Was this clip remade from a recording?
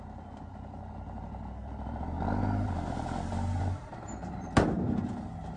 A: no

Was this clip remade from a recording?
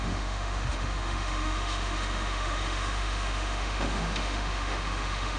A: yes